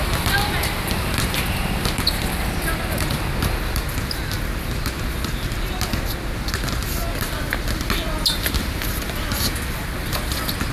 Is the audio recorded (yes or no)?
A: yes